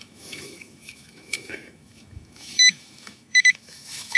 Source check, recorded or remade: remade